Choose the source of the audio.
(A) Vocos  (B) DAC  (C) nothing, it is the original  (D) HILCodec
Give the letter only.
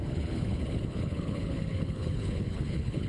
D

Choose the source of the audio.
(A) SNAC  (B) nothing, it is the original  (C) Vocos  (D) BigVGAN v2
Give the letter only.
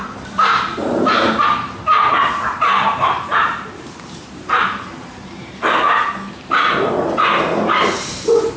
D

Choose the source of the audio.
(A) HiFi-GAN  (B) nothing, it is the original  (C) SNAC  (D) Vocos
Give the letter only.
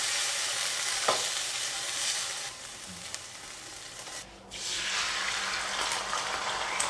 B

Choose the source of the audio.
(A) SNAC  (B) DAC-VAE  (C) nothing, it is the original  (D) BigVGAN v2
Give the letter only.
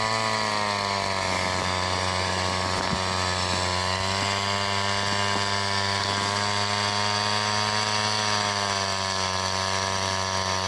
C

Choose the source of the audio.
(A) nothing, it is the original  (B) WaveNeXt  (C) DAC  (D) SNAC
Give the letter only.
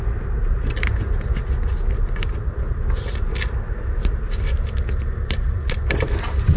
A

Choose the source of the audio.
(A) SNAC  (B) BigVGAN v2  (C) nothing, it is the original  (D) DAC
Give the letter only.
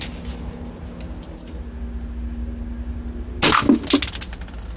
C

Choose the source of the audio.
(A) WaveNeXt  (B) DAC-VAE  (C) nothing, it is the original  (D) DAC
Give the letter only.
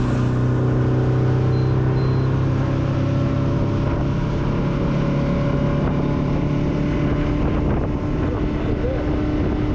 C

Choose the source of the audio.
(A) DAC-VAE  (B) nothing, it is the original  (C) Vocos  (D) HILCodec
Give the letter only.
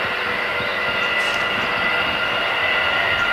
B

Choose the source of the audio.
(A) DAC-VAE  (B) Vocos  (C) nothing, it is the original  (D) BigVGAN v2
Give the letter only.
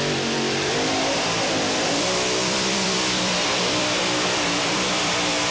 D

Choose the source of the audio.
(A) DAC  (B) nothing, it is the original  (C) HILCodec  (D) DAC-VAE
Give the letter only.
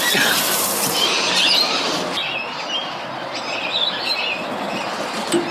B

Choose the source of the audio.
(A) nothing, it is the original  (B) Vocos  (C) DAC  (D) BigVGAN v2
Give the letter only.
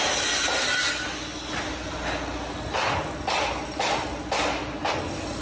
A